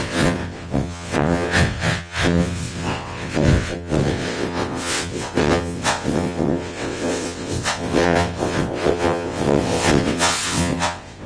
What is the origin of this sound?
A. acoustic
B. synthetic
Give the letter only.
B